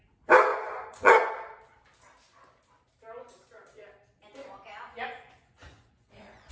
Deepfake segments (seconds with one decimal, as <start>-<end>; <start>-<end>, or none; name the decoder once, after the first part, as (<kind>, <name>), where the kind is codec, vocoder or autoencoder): 0.5-1.3 (vocoder, Vocos); 4.4-6.5

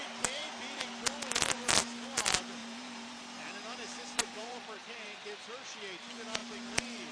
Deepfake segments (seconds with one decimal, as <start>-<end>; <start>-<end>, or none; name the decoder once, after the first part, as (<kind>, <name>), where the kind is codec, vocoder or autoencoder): 0.0-0.5 (vocoder, BigVGAN v2); 2.6-3.2; 3.9-5.5

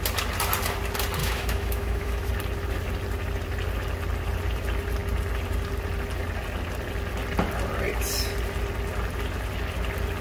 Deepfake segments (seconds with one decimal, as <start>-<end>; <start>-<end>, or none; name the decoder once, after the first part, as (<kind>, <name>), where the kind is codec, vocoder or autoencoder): 1.2-2.3 (autoencoder, DAC-VAE)

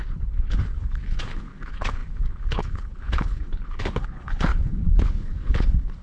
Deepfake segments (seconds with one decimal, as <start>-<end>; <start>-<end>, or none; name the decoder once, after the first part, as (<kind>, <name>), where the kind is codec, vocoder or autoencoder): 0.0-6.0 (codec, HILCodec)

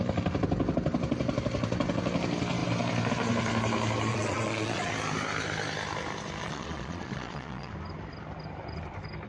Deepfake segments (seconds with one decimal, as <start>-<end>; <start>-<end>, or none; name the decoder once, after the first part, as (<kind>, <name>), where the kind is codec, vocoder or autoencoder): 4.1-4.9 (vocoder, Vocos); 6.4-7.7